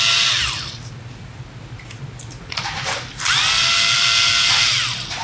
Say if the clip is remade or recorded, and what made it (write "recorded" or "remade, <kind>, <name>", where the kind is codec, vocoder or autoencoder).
recorded